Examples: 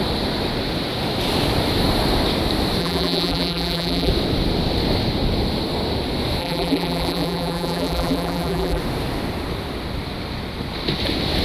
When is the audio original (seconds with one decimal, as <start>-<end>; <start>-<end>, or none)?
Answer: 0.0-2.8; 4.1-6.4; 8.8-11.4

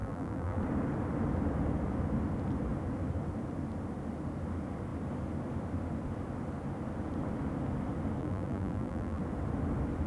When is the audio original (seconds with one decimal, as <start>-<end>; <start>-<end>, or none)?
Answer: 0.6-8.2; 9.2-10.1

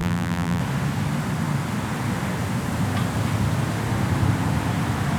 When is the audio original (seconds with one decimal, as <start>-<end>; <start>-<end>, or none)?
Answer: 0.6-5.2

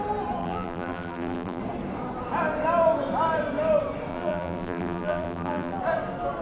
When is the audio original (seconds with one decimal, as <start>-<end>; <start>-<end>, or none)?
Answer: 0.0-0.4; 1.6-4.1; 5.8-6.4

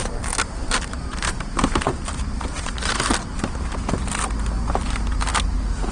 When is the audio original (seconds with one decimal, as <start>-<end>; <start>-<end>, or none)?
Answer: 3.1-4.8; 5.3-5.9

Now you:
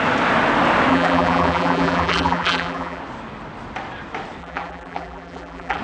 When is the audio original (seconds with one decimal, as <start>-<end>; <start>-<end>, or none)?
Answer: 0.0-0.9; 3.0-4.4